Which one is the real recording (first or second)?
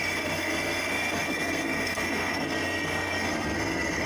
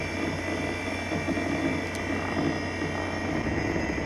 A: second